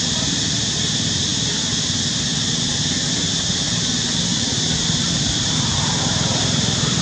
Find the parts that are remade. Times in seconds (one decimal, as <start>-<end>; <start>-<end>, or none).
4.3-7.0